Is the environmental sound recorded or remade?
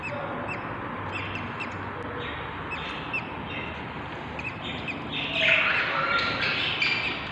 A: recorded